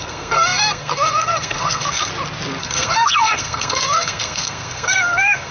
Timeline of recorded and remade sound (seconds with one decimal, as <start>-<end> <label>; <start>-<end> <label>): 0.0-2.1 remade; 2.1-2.6 recorded; 2.6-5.5 remade